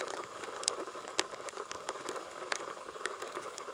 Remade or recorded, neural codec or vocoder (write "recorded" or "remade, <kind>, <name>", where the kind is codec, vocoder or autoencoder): remade, codec, DAC